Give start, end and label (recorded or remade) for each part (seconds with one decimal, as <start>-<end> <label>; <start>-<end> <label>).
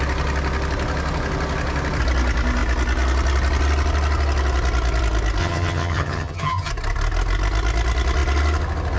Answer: 0.0-5.4 recorded; 5.4-6.7 remade; 6.7-9.0 recorded